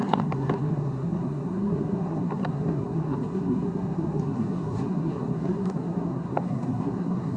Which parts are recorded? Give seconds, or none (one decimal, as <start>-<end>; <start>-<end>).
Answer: none